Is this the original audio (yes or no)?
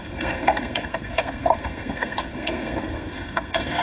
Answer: no